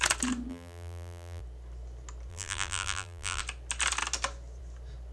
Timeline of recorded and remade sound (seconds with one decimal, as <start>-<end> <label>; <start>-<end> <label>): 0.0-0.5 recorded; 0.5-1.4 remade; 1.4-2.3 recorded; 2.3-3.4 remade; 3.4-5.1 recorded